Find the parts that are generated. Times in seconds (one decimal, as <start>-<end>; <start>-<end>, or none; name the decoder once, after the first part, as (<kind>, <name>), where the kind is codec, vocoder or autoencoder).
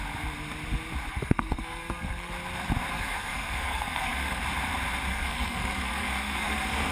1.1-2.3 (codec, SNAC); 2.9-4.4; 5.1-6.9